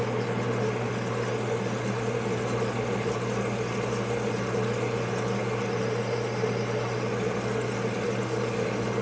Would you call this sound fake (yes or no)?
no